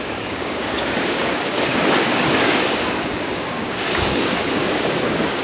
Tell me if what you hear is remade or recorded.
remade